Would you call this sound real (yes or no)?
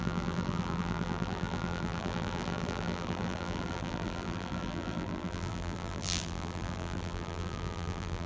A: no